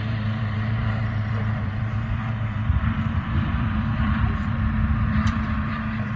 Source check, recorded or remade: remade